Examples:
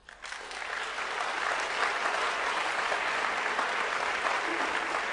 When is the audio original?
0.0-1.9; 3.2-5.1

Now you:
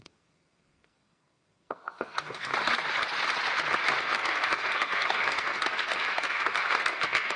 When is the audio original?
2.5-4.0

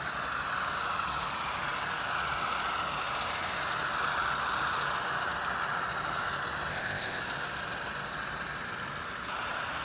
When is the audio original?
0.0-6.7; 7.2-9.8

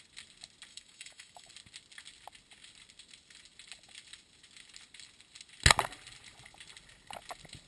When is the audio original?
0.0-0.7; 1.5-7.7